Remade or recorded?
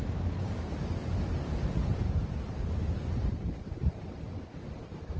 remade